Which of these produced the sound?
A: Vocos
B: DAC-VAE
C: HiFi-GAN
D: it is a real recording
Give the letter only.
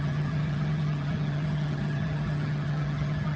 C